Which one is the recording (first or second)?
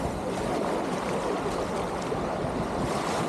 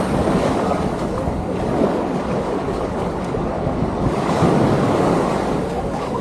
first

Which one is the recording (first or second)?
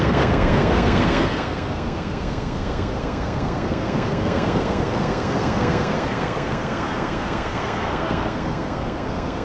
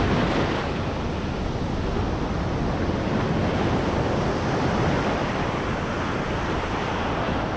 second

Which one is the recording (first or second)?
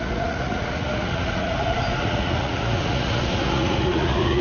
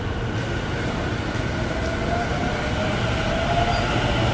second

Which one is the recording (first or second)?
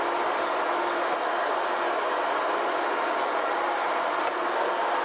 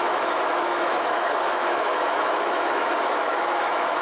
first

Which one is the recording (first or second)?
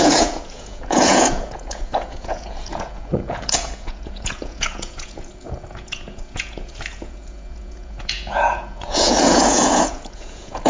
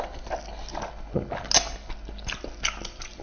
second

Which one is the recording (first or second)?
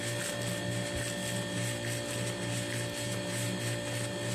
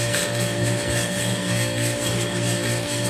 first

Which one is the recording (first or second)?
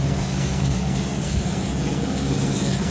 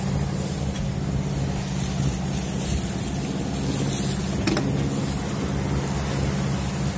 second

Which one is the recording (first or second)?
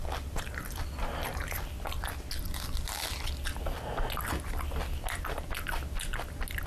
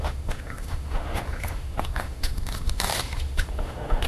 first